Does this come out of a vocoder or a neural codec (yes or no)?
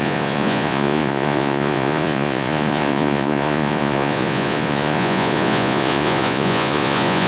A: yes